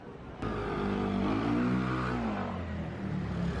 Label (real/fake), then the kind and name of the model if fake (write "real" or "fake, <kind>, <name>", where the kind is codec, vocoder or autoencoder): real